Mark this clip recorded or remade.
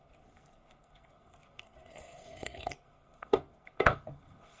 remade